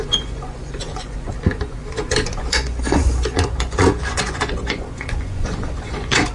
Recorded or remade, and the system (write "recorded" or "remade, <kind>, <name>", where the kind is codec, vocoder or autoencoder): remade, vocoder, Vocos